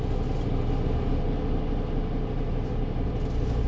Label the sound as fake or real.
real